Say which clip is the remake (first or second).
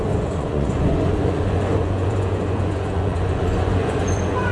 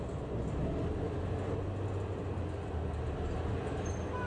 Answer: first